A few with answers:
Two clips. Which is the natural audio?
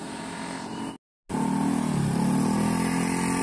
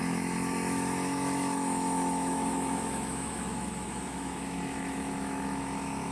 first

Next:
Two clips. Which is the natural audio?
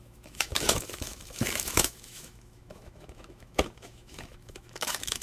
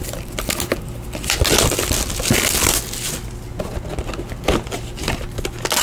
second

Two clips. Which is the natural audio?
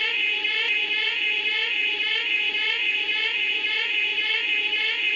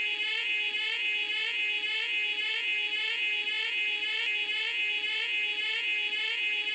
second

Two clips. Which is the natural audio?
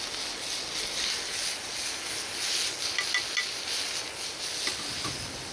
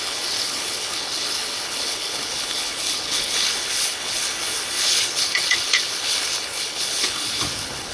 first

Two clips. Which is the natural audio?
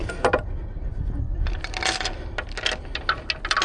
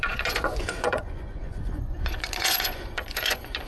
first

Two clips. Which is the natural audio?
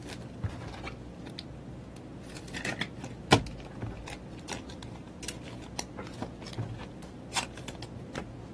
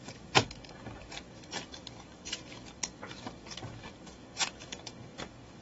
first